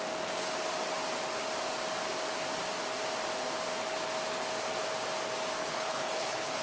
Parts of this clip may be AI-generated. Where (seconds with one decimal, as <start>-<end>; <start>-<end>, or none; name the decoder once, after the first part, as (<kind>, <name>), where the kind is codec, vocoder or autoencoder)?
5.6-6.6 (codec, HILCodec)

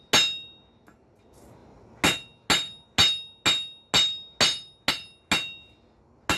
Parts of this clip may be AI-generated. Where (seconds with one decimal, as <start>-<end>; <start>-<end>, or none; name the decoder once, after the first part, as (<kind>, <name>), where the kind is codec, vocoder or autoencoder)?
none

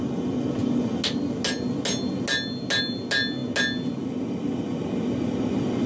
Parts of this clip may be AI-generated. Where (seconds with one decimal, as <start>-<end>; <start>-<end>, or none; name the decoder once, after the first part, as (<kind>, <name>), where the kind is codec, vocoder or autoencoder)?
none

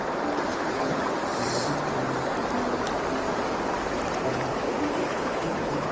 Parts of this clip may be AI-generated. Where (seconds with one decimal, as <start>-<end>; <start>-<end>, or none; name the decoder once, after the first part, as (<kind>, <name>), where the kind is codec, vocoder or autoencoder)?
0.5-1.0 (codec, HILCodec); 5.0-5.9

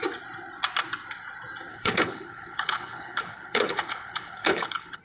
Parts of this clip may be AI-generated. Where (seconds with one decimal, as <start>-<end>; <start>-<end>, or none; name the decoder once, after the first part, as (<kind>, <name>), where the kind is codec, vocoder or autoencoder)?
1.7-5.0 (codec, HILCodec)

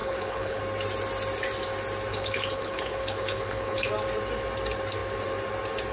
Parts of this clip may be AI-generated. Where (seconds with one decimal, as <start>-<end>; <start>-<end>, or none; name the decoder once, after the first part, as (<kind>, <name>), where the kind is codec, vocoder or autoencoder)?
0.0-0.6 (codec, HILCodec); 2.1-3.9